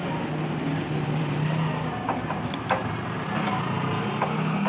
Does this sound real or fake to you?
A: real